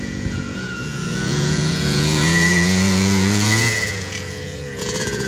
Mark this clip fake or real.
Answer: fake